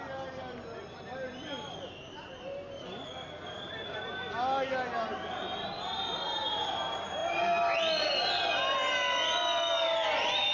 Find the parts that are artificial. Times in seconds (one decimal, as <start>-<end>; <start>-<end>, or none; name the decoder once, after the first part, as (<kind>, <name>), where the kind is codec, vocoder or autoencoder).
none